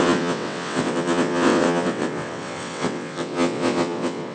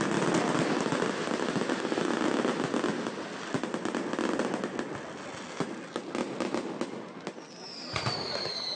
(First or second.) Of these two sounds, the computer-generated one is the first